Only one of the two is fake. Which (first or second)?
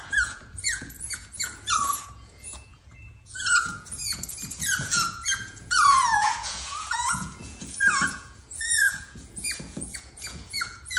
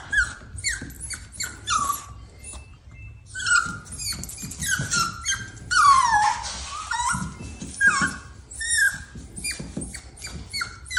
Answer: first